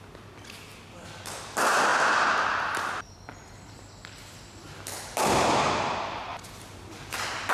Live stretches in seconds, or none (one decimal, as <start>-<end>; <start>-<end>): 0.0-7.5